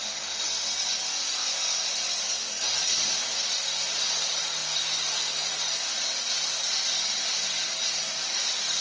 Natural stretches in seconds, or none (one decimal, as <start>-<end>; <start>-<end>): 0.0-8.8